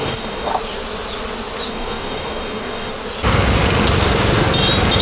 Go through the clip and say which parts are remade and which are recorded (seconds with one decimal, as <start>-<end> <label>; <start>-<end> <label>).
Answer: 0.0-0.5 remade; 0.5-1.7 recorded; 1.7-2.9 remade; 2.9-5.0 recorded